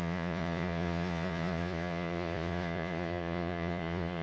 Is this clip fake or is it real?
fake